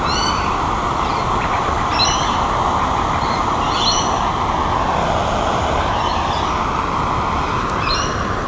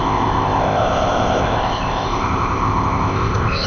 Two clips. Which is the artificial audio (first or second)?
second